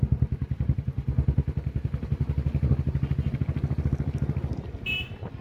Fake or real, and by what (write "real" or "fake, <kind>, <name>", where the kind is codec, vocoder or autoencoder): real